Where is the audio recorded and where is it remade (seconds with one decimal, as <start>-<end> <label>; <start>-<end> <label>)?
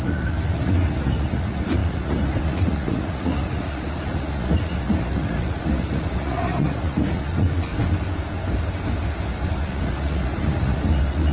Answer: 0.0-7.7 remade; 7.7-9.5 recorded; 9.5-11.3 remade